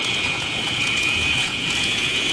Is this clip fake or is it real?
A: fake